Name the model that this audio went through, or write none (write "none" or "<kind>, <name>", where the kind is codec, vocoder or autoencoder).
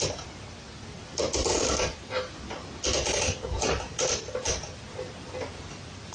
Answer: vocoder, BigVGAN v2